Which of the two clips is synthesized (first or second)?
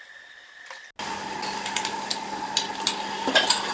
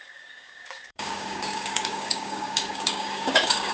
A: second